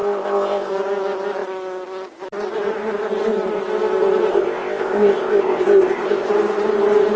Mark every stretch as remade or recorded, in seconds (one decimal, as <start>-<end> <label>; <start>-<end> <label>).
0.0-0.7 remade; 0.7-4.3 recorded; 4.3-6.3 remade; 6.3-7.2 recorded